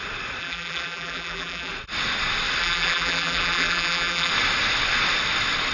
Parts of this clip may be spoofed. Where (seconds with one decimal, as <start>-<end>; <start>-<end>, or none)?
0.4-1.7; 2.6-4.3

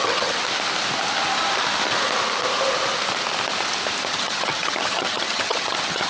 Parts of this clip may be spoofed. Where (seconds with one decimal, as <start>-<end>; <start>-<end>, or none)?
0.0-0.4; 4.1-6.1

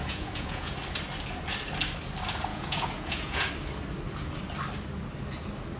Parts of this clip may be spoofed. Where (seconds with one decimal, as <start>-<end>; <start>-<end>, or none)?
0.0-0.7; 2.5-3.5

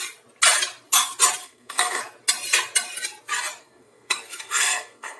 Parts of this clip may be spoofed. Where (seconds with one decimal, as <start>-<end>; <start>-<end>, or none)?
1.4-2.0; 3.6-5.2

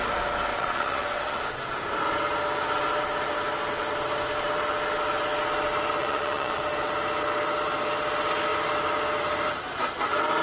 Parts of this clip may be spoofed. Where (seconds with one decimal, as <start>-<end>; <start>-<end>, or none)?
0.5-1.4; 6.0-6.6